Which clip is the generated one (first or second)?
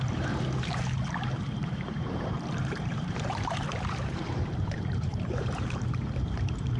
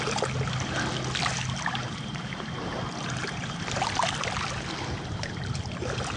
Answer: first